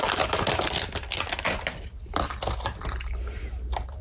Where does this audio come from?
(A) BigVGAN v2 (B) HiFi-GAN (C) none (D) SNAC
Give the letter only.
C